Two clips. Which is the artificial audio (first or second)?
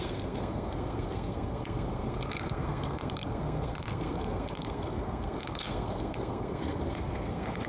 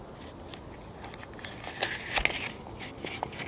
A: first